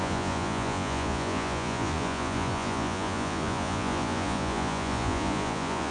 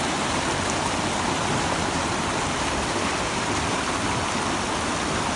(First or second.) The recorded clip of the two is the second